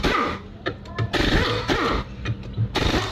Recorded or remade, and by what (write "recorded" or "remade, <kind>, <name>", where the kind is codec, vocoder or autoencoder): recorded